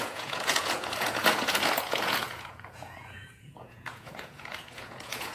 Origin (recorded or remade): remade